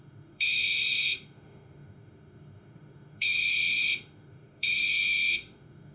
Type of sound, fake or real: fake